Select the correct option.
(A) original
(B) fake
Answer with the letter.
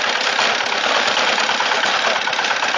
B